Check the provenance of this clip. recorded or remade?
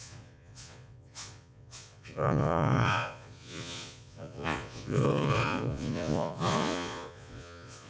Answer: remade